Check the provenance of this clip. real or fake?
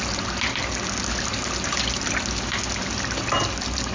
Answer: real